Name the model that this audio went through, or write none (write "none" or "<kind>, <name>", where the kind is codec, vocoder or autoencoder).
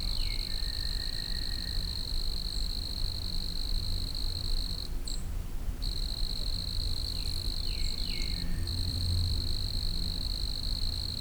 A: vocoder, BigVGAN v2